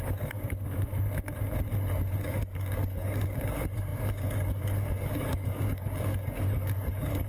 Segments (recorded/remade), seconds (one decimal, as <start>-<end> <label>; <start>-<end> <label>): 0.0-0.9 remade; 0.9-2.2 recorded; 2.2-7.3 remade